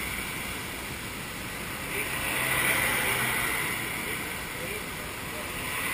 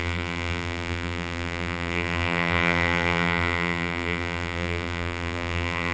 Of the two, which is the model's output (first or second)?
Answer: second